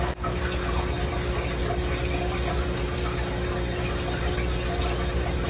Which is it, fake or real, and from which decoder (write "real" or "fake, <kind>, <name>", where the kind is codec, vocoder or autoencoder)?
real